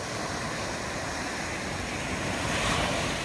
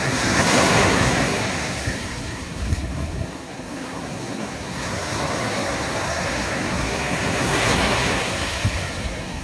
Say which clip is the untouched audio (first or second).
first